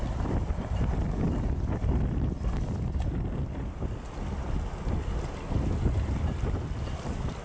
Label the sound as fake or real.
real